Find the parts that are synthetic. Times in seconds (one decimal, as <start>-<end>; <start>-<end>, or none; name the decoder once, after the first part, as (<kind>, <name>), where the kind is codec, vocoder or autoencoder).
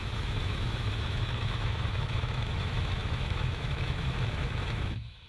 0.0-5.3 (autoencoder, DAC-VAE)